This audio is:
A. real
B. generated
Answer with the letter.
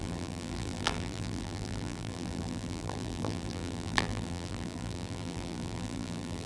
B